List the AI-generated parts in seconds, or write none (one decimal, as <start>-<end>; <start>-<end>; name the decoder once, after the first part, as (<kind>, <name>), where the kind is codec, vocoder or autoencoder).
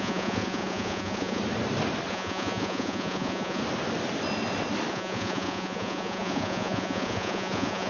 0.0-1.4 (vocoder, Vocos); 2.1-3.6; 4.9-7.9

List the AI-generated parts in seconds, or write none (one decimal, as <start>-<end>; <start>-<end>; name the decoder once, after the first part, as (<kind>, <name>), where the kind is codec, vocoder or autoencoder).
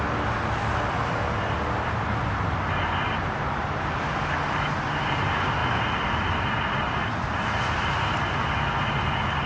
none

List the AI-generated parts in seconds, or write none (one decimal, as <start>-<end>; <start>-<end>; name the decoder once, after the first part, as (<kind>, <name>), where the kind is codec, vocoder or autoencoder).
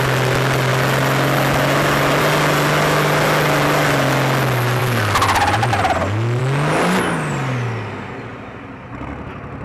none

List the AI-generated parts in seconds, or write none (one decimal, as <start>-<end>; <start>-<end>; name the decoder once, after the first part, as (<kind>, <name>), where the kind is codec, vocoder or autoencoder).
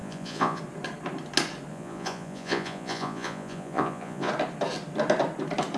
0.0-0.6 (vocoder, Vocos); 1.7-4.3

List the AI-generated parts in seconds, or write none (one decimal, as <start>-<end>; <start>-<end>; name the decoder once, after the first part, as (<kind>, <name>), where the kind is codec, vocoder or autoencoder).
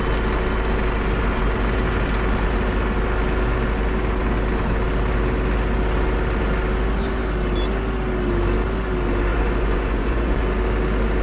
9.3-10.4 (vocoder, Vocos)